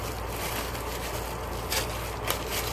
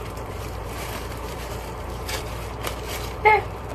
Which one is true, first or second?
first